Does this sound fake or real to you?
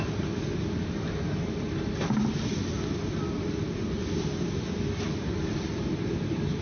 real